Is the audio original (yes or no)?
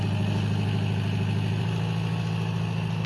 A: yes